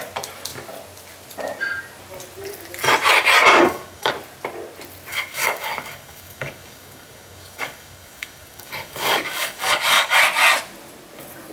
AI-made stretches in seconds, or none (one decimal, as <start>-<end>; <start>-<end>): 3.5-4.1; 5.1-10.2